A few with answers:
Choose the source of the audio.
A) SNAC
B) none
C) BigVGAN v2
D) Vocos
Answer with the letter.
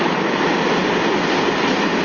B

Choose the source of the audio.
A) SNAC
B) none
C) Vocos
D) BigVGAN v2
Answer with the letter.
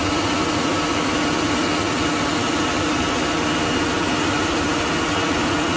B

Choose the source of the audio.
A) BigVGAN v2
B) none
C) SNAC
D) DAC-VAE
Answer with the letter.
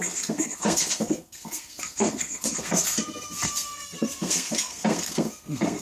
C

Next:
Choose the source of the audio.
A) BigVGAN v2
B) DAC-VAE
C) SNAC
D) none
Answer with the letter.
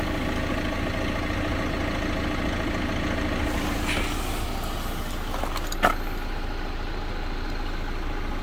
D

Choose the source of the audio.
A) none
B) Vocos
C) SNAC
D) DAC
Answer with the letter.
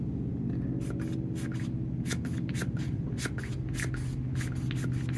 A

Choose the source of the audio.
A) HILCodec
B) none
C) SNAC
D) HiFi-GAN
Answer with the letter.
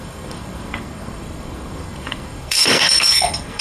C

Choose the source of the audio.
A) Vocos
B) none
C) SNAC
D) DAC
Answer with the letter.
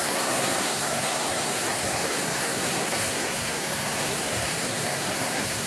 C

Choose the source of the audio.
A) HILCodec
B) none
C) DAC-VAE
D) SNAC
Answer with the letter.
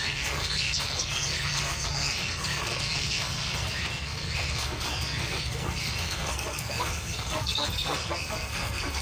D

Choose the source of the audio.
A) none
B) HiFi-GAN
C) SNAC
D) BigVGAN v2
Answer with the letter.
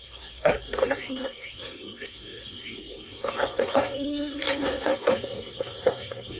C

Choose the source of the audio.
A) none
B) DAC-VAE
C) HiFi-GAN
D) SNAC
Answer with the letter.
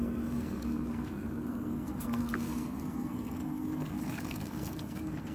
D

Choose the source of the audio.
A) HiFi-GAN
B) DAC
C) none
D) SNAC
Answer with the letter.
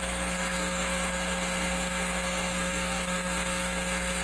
D